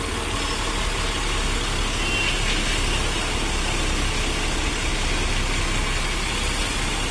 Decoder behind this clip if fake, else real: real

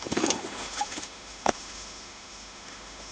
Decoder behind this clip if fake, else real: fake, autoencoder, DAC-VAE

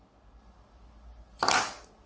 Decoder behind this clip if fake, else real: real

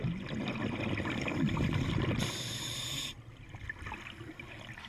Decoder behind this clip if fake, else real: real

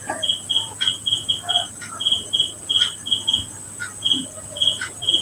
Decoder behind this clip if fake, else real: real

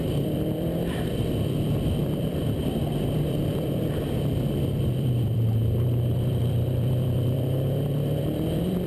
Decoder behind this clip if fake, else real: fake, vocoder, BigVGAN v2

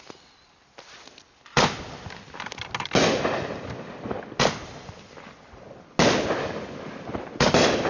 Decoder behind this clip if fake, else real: real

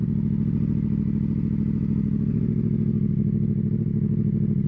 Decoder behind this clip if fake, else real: real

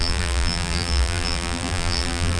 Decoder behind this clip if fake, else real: fake, vocoder, BigVGAN v2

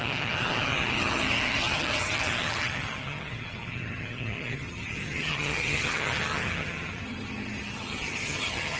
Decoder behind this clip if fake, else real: fake, vocoder, HiFi-GAN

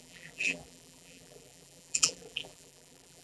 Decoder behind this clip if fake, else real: fake, vocoder, BigVGAN v2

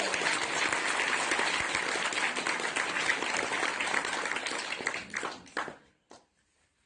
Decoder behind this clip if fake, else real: real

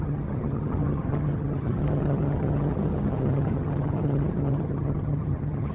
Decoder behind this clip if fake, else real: fake, vocoder, HiFi-GAN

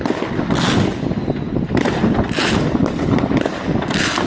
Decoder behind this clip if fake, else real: real